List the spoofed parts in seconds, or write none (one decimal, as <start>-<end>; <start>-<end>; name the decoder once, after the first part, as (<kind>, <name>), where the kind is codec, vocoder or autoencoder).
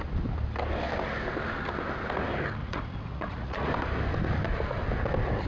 2.6-3.7 (vocoder, Vocos)